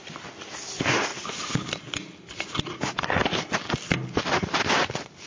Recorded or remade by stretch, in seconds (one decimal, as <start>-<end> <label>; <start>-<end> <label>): 0.0-5.3 recorded